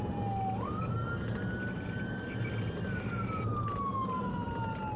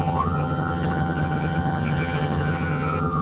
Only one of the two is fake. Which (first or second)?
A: second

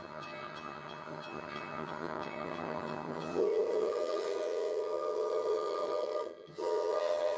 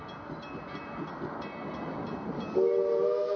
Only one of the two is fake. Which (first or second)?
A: first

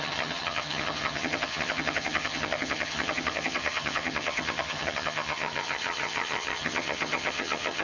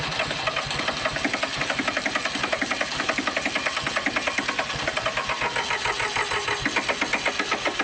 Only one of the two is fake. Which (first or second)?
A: first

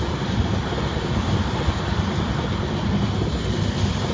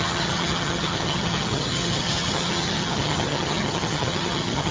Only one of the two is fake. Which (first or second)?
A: second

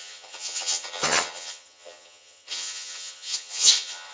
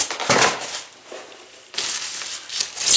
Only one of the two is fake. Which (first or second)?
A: first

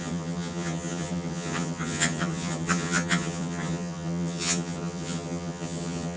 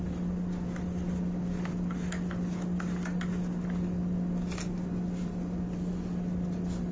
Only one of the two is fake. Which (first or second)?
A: first